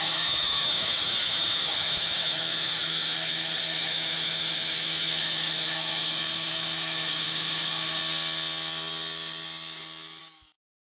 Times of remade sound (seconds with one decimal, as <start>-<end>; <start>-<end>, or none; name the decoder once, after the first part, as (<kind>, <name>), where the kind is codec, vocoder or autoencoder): 0.0-8.0 (autoencoder, DAC-VAE); 10.2-10.9